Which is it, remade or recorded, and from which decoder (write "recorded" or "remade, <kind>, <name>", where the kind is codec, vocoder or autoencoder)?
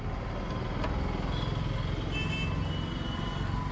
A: recorded